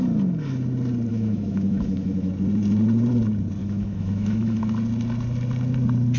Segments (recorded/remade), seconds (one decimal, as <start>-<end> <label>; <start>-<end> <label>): 0.0-1.1 recorded; 1.1-2.3 remade; 2.3-3.6 recorded; 3.6-4.6 remade; 4.6-6.2 recorded